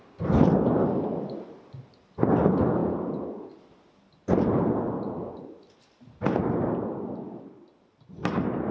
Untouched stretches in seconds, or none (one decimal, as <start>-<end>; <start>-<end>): 0.0-2.8; 3.5-8.7